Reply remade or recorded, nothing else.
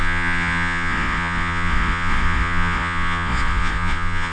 remade